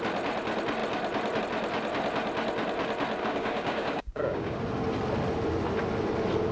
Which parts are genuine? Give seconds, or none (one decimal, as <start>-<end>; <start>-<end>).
0.0-3.2; 4.6-6.5